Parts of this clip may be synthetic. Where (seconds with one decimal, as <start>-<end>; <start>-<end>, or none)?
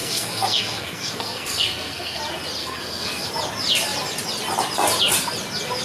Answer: 0.0-2.2; 2.6-3.3